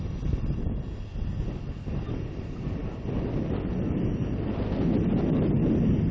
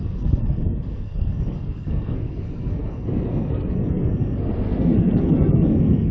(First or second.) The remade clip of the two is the second